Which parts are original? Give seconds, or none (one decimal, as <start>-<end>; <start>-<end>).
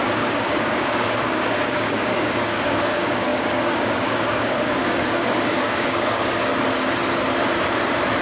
6.5-8.2